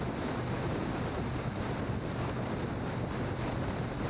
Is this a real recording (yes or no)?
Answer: yes